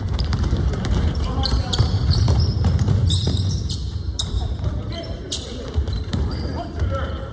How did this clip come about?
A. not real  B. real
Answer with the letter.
A